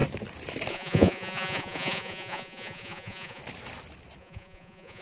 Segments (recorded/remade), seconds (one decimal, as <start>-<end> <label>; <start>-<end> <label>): 0.0-0.7 recorded; 0.7-3.4 remade; 3.4-4.2 recorded; 4.2-5.0 remade